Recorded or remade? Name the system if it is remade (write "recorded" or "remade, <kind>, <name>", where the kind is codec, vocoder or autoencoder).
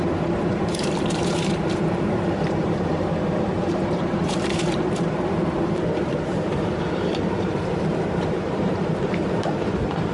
remade, vocoder, BigVGAN v2